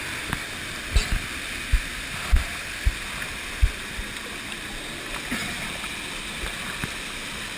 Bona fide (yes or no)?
yes